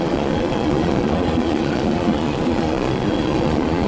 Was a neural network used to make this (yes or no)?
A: yes